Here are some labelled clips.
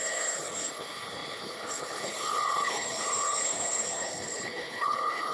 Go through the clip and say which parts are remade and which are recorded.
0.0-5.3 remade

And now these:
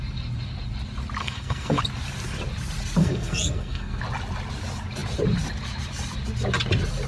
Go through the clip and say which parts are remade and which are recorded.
0.0-1.2 recorded; 1.2-1.8 remade; 1.8-3.0 recorded; 3.0-4.0 remade; 4.0-7.1 recorded

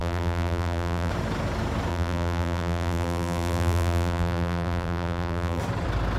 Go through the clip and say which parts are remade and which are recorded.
0.0-1.1 remade; 1.1-1.9 recorded; 1.9-5.6 remade; 5.6-6.2 recorded